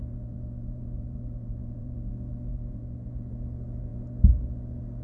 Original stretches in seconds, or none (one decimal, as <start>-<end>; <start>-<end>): 2.1-2.5; 3.3-5.0

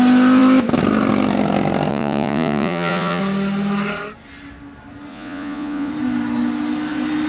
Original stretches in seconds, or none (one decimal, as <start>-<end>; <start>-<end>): 0.0-1.9; 3.2-5.1; 5.9-7.3

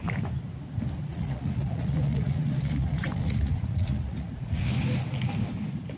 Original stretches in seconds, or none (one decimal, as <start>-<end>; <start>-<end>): 0.0-1.1; 4.7-6.0

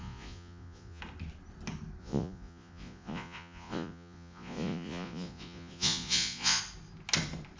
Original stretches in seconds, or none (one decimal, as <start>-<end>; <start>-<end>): 1.0-2.0; 6.6-7.6

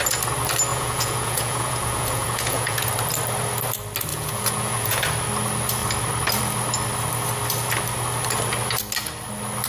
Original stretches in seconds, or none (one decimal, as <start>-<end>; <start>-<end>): 0.0-0.7; 2.9-4.1; 5.0-9.7

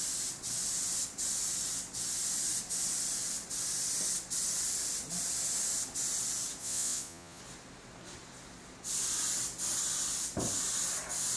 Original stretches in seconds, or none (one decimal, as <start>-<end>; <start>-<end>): 0.0-6.6; 7.4-11.4

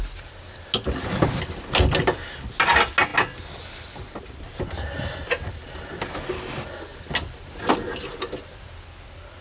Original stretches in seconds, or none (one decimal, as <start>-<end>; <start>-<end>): 0.0-9.4

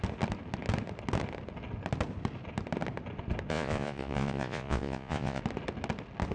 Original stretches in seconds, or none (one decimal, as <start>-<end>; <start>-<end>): 0.0-3.5; 5.4-6.3